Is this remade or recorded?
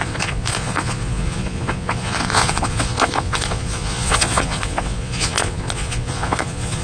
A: remade